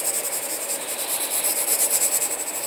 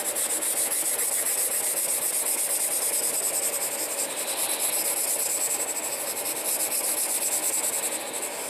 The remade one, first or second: first